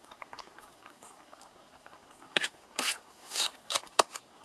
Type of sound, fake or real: fake